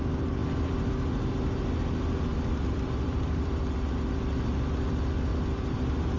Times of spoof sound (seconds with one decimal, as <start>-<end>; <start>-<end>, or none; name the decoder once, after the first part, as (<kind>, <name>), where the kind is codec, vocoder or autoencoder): 2.3-3.5 (vocoder, BigVGAN v2); 5.3-6.2